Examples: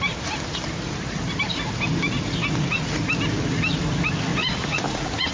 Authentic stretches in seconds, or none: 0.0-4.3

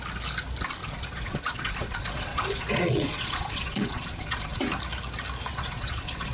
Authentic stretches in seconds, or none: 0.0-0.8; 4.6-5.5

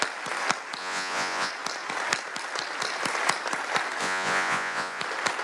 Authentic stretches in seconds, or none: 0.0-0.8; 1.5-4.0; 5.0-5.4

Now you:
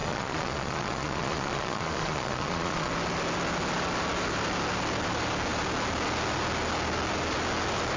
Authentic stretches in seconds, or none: 2.9-8.0

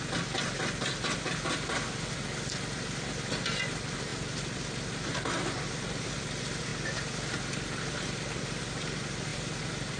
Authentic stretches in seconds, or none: 0.0-10.0